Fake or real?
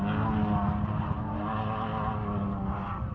real